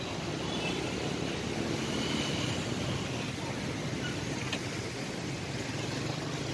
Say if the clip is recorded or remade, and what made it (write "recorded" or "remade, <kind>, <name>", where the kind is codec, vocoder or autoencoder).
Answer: recorded